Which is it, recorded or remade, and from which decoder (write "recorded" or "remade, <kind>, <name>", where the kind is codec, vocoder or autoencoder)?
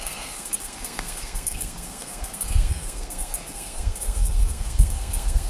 remade, codec, SNAC